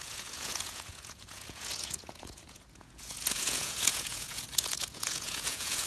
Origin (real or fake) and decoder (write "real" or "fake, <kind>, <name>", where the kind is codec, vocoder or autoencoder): fake, vocoder, Vocos